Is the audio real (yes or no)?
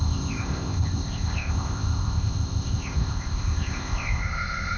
no